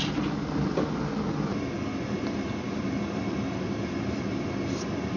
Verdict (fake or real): real